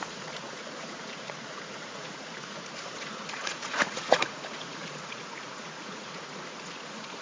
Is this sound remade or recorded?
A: remade